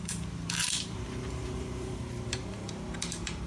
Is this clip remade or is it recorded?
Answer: remade